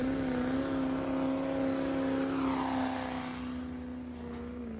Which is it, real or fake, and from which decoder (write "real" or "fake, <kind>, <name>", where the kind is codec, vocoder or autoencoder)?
real